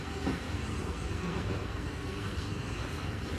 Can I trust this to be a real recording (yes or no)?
no